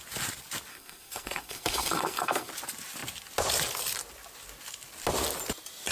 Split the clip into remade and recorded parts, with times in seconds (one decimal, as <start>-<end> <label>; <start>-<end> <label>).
0.0-0.7 recorded; 0.7-2.5 remade; 2.5-5.9 recorded